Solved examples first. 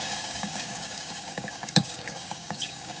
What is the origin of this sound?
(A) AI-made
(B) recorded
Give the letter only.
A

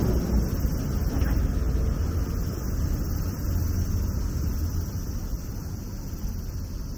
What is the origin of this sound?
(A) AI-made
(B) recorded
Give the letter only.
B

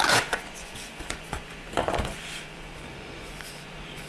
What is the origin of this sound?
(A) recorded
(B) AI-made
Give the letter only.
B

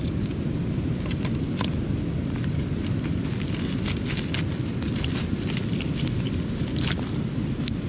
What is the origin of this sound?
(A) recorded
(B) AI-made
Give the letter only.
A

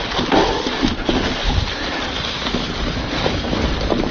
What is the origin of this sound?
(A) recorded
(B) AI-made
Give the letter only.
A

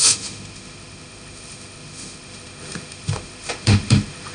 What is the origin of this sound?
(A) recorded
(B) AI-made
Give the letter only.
B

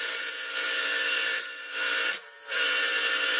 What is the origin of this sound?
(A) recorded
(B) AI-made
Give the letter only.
B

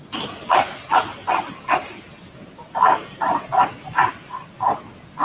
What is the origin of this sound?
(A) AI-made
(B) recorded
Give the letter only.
B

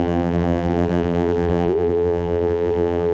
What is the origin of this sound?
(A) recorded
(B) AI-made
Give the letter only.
B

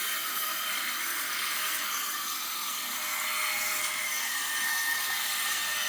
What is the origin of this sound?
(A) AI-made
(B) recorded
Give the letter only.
A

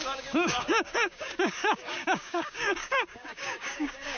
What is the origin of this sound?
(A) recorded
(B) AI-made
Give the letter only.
B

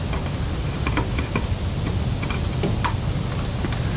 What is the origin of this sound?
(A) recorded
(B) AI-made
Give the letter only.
A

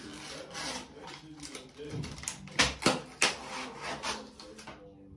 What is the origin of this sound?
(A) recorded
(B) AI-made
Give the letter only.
A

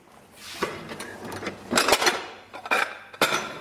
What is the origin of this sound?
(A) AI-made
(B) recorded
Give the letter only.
A